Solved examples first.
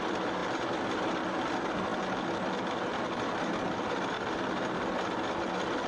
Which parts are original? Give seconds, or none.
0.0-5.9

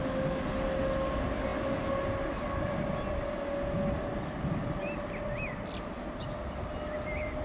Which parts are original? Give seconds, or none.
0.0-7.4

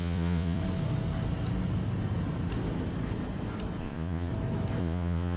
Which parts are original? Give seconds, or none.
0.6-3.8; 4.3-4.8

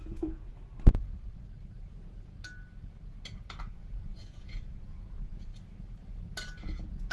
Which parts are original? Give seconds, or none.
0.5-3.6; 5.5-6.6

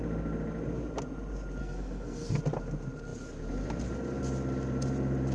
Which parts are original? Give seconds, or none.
0.0-1.6; 2.4-5.3

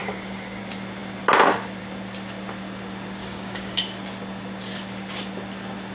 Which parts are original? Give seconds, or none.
0.6-3.2; 3.8-5.9

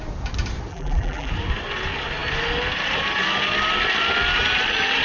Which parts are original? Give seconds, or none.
0.0-0.7; 1.3-5.0